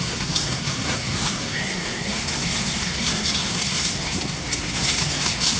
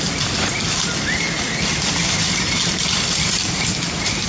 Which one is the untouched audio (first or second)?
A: second